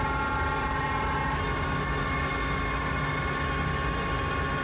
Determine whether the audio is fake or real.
real